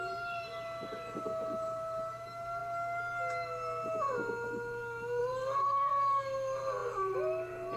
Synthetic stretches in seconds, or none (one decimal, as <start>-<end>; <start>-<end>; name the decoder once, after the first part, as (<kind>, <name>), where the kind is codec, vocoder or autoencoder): 5.2-5.9 (vocoder, BigVGAN v2)